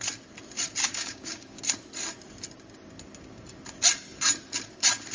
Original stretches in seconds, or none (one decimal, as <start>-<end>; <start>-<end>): 0.0-0.8; 1.6-5.1